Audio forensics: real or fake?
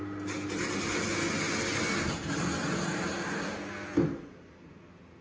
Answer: real